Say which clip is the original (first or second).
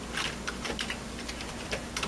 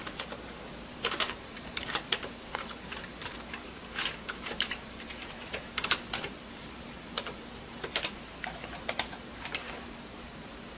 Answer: first